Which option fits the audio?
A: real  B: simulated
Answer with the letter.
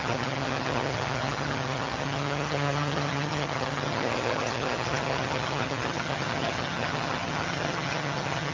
B